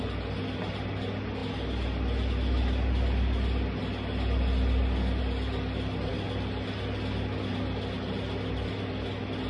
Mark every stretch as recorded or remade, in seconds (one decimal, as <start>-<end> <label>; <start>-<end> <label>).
0.0-9.5 recorded